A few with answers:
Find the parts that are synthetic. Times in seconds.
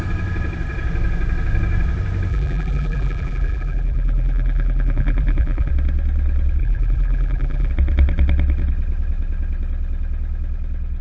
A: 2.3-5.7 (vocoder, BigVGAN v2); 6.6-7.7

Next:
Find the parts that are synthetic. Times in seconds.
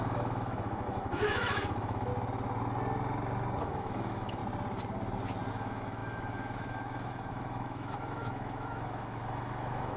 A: 0.0-2.1 (autoencoder, DAC-VAE); 3.6-4.4; 5.5-10.0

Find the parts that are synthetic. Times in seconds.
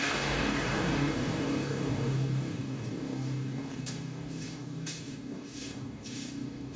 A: 0.0-6.8 (codec, DAC)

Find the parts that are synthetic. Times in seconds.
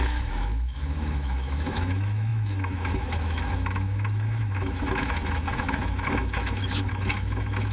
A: 0.0-7.7 (autoencoder, DAC-VAE)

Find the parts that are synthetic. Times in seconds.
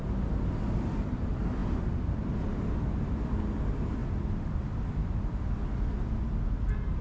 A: none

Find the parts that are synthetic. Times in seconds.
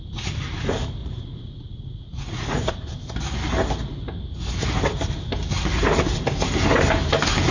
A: 1.0-2.7 (vocoder, Vocos)